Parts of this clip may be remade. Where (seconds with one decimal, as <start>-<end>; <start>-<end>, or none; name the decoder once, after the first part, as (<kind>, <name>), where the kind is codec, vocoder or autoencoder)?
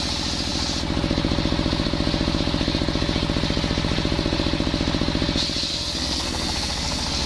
5.7-7.3 (codec, SNAC)